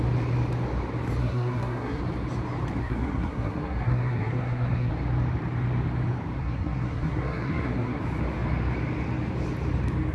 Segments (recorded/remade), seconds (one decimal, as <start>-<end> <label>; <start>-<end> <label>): 0.0-1.2 recorded; 1.2-2.0 remade; 2.0-2.8 recorded; 2.8-4.9 remade; 4.9-6.4 recorded; 6.4-8.0 remade; 8.0-10.1 recorded